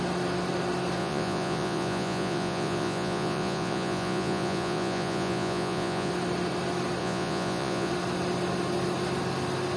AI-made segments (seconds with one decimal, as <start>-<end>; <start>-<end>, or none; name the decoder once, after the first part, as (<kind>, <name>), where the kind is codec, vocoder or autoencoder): 1.0-6.1 (vocoder, Vocos); 7.0-7.9